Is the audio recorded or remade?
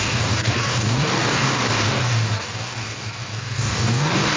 remade